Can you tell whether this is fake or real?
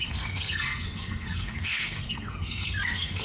fake